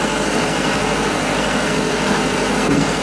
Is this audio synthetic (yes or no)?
yes